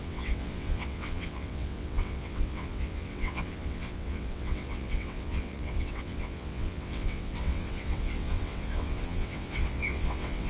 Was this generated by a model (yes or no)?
yes